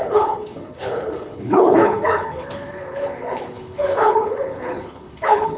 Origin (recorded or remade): remade